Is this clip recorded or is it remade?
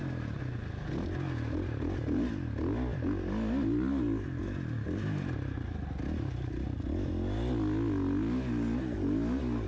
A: recorded